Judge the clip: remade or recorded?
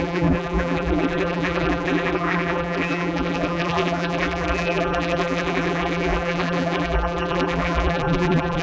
remade